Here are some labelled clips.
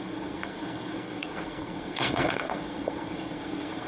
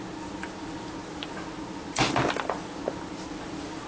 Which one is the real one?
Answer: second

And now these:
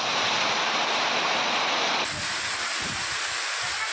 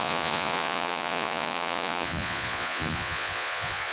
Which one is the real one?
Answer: first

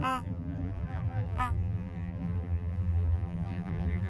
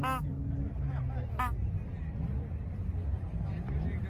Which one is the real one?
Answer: second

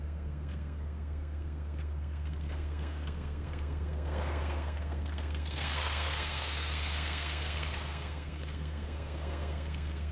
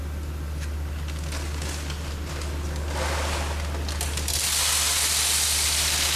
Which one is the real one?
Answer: second